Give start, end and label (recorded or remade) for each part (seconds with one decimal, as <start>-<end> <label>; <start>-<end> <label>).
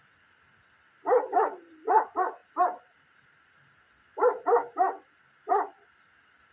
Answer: 0.0-6.5 recorded